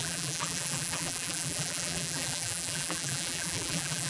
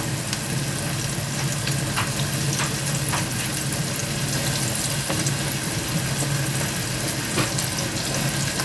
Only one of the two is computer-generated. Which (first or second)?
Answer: first